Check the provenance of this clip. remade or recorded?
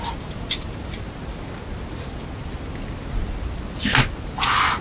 recorded